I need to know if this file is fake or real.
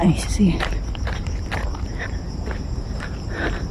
fake